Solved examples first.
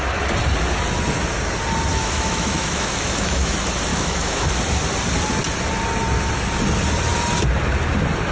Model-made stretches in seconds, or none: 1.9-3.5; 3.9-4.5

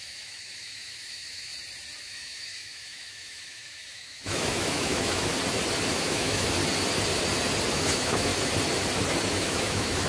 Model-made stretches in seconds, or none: 0.0-1.5; 2.0-5.3; 5.9-6.6; 7.7-8.3; 9.3-10.1